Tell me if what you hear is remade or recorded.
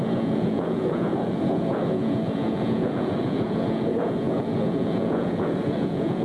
remade